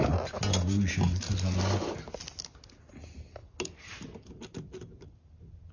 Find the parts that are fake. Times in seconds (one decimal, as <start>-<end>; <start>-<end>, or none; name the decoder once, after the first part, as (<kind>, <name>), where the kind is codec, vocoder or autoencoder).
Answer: none